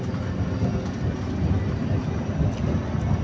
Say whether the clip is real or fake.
real